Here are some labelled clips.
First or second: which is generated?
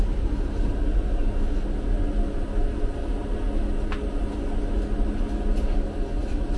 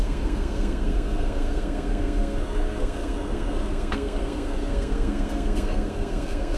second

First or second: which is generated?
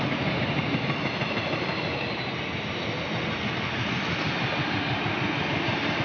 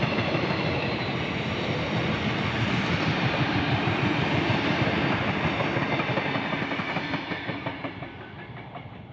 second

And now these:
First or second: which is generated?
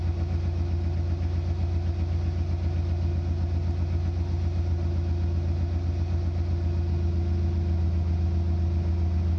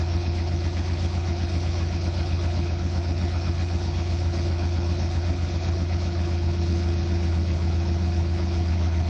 second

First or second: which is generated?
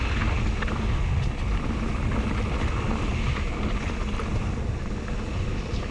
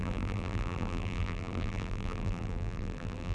second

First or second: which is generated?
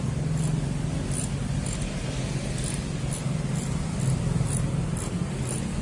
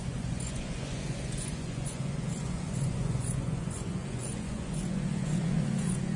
second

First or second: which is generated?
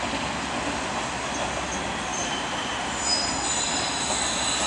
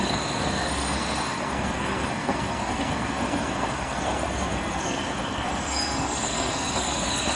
second